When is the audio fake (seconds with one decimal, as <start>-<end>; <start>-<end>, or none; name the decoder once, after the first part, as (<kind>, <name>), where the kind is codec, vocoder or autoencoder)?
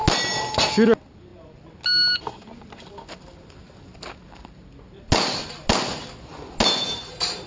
none